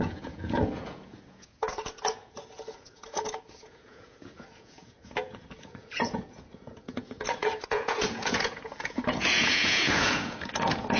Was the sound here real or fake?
fake